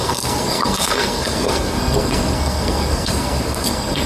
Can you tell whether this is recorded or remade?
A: remade